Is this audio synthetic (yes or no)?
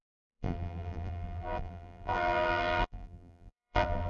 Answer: yes